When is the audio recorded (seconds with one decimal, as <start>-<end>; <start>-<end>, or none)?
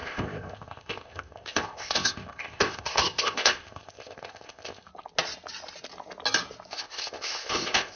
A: 4.9-6.7